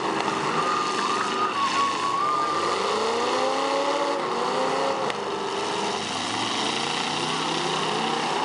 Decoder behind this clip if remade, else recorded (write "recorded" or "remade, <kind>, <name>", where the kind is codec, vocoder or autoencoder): recorded